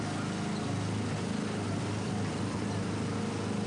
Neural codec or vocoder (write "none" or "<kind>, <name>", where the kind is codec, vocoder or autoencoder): none